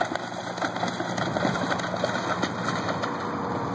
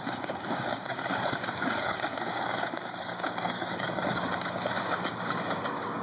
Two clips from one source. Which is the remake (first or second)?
second